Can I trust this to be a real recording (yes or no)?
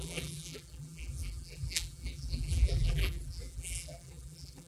no